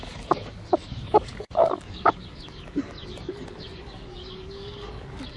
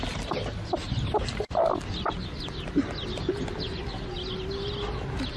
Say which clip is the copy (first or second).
first